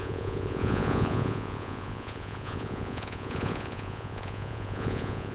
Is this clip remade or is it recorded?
remade